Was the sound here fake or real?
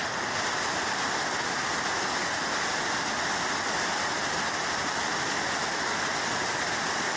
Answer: real